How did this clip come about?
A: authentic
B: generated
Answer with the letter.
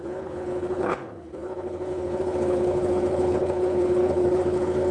B